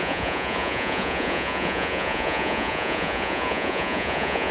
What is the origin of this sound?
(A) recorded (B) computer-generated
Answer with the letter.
B